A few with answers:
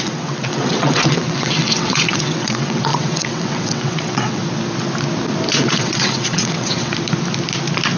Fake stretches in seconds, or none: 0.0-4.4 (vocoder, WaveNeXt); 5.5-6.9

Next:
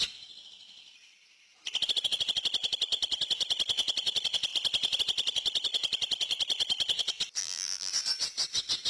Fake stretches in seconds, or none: 7.4-7.9 (vocoder, BigVGAN v2)

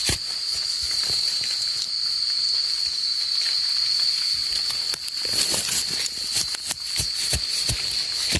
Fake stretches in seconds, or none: 4.4-5.0 (vocoder, BigVGAN v2)

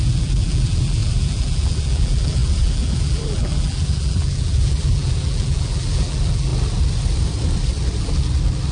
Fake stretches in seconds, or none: 0.0-6.5 (vocoder, BigVGAN v2)